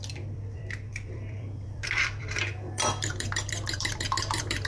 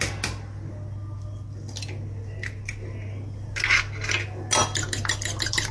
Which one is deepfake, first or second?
first